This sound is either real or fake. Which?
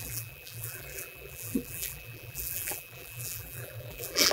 fake